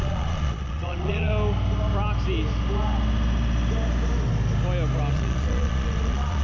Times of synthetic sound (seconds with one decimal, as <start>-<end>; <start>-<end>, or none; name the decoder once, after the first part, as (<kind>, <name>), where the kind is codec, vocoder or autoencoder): 0.0-1.3 (vocoder, Vocos); 5.1-6.4